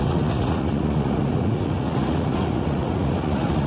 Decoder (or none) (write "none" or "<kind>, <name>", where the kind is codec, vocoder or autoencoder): vocoder, Vocos